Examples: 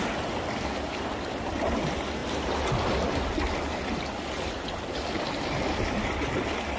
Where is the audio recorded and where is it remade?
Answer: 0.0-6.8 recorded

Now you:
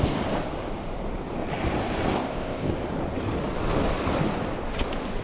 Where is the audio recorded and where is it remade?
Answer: 0.0-2.1 recorded; 2.1-2.7 remade; 2.7-5.2 recorded

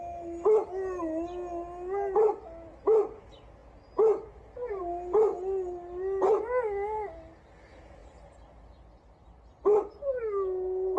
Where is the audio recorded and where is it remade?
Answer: 0.0-11.0 recorded

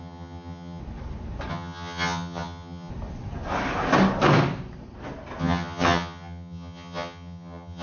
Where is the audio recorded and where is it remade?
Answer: 0.0-0.8 remade; 0.8-1.5 recorded; 1.5-2.9 remade; 2.9-5.4 recorded; 5.4-7.8 remade